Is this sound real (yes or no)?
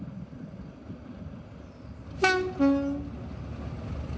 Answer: yes